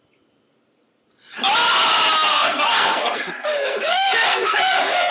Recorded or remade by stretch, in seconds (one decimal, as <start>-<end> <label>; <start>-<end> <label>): 0.0-2.3 recorded; 2.3-5.1 remade